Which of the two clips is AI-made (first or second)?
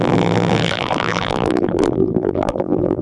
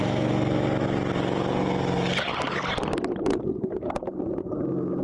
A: first